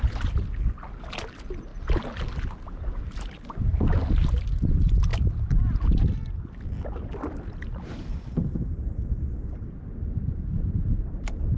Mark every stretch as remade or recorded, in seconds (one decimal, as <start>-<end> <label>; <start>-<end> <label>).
0.0-8.1 recorded; 8.1-11.0 remade; 11.0-11.6 recorded

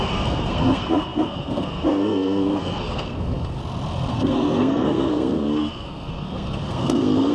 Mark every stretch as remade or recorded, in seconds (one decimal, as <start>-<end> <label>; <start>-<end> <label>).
0.0-3.6 remade; 3.6-4.1 recorded; 4.1-7.3 remade

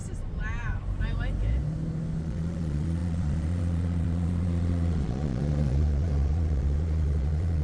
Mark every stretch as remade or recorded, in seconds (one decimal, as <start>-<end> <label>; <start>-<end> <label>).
0.0-2.2 recorded; 2.2-7.6 remade

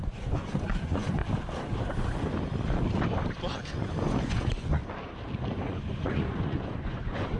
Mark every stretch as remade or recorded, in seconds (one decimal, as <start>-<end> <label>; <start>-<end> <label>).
0.0-1.2 remade; 1.2-3.7 recorded; 3.7-4.8 remade; 4.8-5.6 recorded; 5.6-7.4 remade

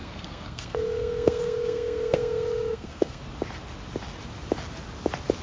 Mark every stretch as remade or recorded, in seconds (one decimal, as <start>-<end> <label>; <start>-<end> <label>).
0.0-3.2 remade; 3.2-5.4 recorded